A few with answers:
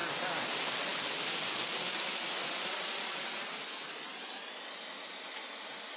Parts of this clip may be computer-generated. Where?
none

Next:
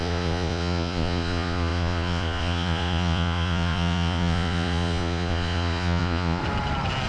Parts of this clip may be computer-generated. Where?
0.0-6.4 (vocoder, Vocos)

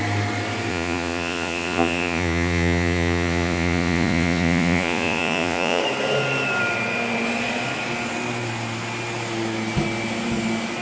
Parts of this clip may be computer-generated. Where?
0.7-5.8 (vocoder, Vocos)

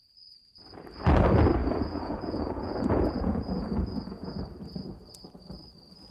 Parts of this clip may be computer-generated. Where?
1.6-4.4 (vocoder, Vocos)